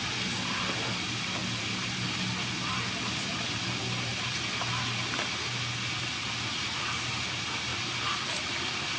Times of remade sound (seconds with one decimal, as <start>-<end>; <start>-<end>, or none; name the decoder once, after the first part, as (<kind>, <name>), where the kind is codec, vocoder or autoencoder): none